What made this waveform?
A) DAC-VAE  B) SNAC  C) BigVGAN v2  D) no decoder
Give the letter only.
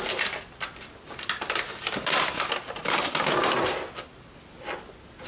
D